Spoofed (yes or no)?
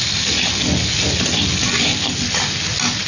no